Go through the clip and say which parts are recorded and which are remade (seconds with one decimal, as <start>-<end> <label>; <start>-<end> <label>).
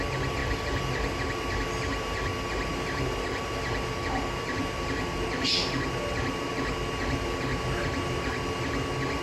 0.0-9.2 recorded